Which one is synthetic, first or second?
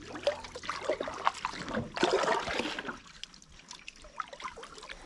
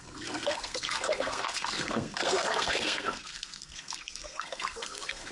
second